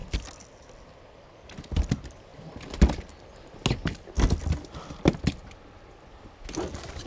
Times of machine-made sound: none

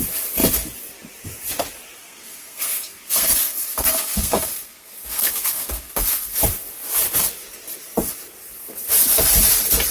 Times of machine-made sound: 2.0-6.4 (codec, SNAC)

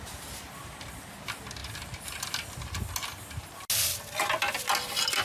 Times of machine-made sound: none

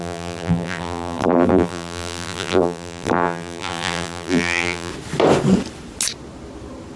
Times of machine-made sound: 0.0-4.9 (vocoder, BigVGAN v2)

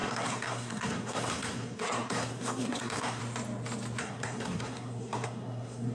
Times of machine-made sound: 0.0-3.2 (codec, SNAC); 4.0-5.9

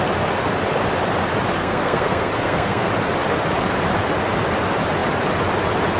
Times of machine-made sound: 1.6-2.9 (codec, SNAC)

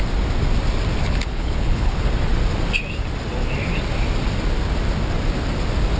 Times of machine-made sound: 1.0-2.1 (codec, HILCodec)

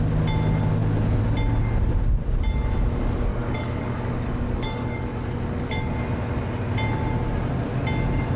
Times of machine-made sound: 3.3-5.9 (codec, DAC)